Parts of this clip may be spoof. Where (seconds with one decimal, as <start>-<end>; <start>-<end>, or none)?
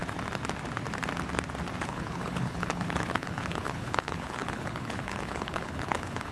1.8-6.3